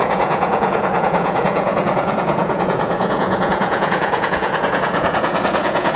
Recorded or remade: remade